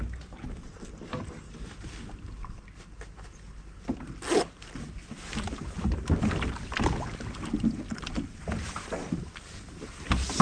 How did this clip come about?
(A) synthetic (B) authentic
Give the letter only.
B